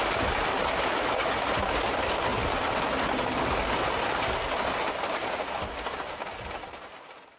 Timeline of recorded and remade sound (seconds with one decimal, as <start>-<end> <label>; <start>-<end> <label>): 0.0-0.8 remade; 0.8-7.4 recorded